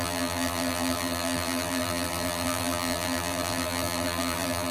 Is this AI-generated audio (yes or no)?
yes